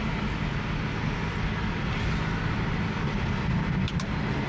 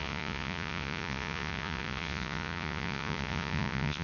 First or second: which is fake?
second